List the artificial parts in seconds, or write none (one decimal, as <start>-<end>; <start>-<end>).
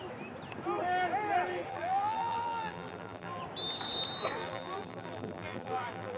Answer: 1.7-3.4; 4.4-6.2